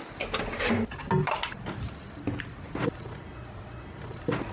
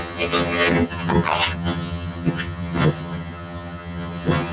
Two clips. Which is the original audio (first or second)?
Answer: first